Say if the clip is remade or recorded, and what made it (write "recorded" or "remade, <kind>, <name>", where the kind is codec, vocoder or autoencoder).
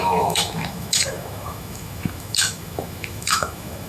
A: remade, autoencoder, DAC-VAE